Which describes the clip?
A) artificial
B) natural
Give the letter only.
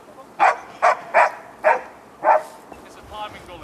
B